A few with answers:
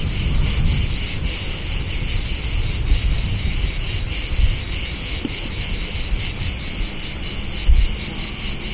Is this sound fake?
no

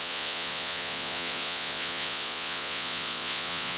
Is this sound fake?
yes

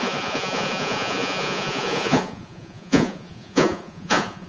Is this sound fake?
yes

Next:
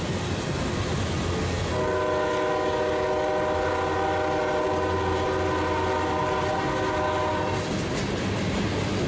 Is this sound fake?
no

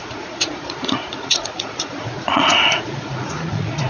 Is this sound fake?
yes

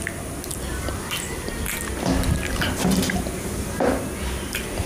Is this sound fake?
no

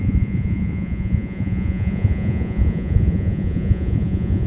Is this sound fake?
yes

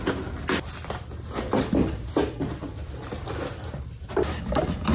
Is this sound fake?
no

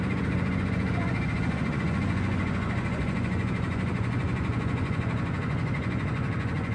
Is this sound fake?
yes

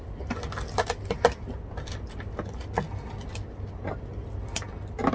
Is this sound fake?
no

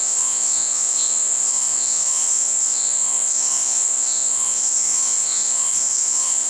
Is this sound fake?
yes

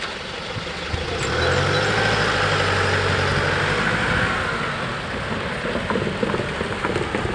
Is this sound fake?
no